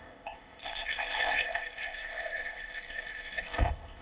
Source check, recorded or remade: remade